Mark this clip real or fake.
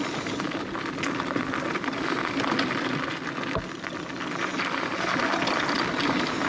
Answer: real